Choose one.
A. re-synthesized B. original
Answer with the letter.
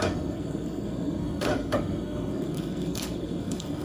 A